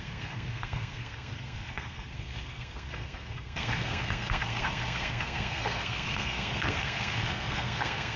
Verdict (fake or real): fake